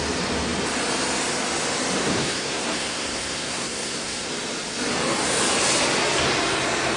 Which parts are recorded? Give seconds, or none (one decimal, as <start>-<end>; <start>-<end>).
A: 0.0-2.0; 4.3-7.0